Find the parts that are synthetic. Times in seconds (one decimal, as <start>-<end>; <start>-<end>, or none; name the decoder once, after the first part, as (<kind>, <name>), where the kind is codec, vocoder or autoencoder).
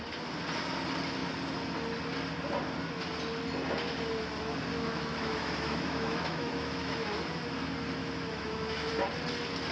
4.7-7.2 (autoencoder, DAC-VAE); 8.0-8.9